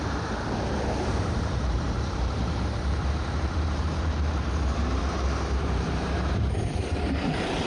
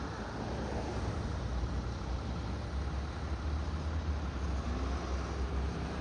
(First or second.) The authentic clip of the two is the second